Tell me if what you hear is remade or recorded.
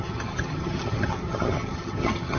remade